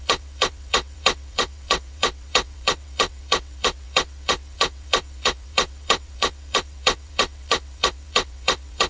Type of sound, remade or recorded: remade